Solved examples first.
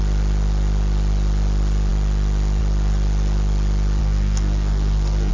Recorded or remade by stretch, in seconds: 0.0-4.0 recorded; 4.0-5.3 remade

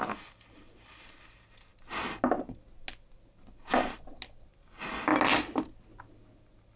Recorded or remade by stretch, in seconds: 0.0-6.8 recorded

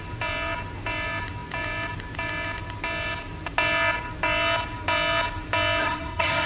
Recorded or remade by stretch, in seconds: 0.0-5.8 recorded; 5.8-6.5 remade